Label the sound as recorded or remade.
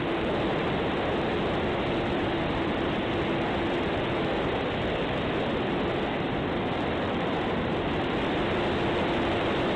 recorded